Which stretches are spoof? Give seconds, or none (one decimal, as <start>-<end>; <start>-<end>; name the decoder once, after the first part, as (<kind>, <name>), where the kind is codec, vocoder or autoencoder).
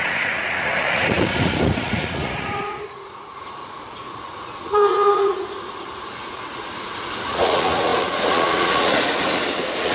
0.0-9.9 (vocoder, Vocos)